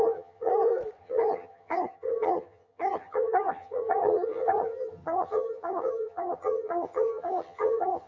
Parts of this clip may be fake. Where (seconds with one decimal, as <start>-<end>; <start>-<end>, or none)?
0.0-0.5; 1.0-8.1